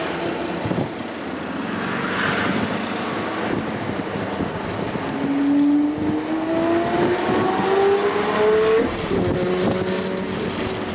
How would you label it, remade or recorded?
recorded